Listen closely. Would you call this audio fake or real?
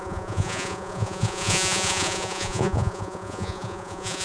fake